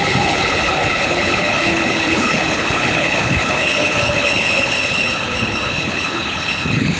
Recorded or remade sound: remade